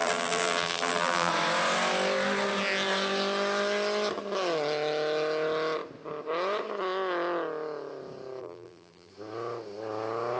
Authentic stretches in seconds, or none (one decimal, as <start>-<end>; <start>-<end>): 1.3-8.4; 9.1-10.4